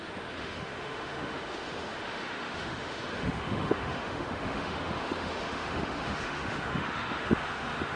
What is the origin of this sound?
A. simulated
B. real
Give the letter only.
A